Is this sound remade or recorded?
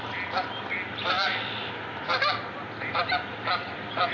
recorded